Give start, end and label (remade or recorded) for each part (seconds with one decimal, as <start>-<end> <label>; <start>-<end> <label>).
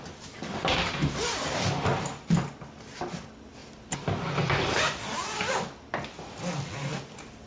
0.0-0.7 recorded; 0.7-1.7 remade; 1.7-3.6 recorded; 3.6-5.5 remade; 5.5-7.5 recorded